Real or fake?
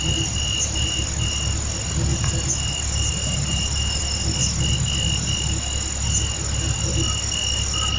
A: real